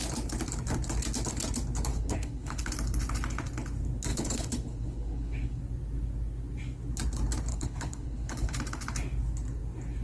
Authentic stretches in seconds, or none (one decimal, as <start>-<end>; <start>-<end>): 0.0-1.9; 2.7-4.1; 5.6-7.5; 8.6-10.0